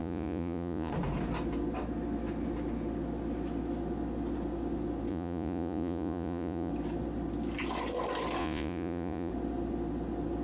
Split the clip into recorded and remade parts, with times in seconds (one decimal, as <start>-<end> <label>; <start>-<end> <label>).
0.0-0.9 remade; 0.9-5.1 recorded; 5.1-6.7 remade; 6.7-8.4 recorded; 8.4-9.3 remade; 9.3-10.4 recorded